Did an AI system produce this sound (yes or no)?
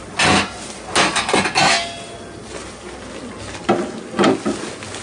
no